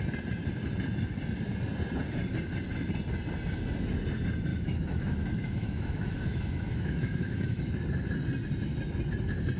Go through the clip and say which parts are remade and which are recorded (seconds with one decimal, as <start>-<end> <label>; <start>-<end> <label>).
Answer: 0.0-4.5 recorded; 4.5-7.7 remade; 7.7-9.6 recorded